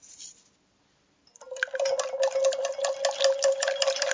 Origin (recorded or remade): recorded